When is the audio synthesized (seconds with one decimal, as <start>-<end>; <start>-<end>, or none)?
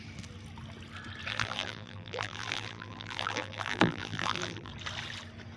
1.3-4.7